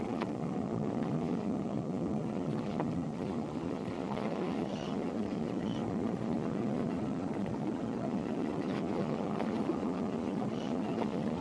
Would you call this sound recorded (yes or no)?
no